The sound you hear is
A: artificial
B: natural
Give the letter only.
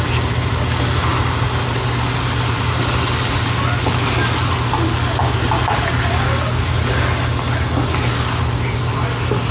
B